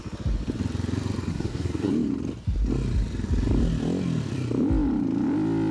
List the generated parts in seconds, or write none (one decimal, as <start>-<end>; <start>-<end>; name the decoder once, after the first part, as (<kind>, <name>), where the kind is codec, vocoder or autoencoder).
1.3-1.9 (codec, SNAC)